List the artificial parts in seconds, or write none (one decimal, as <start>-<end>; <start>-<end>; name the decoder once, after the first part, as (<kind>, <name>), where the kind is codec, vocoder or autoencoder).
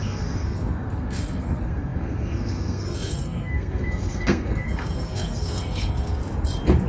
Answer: 0.0-6.2 (codec, SNAC)